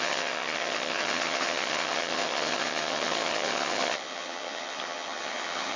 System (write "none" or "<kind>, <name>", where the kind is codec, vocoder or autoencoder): vocoder, HiFi-GAN